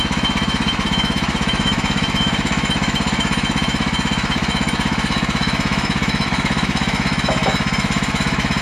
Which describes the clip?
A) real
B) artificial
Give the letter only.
B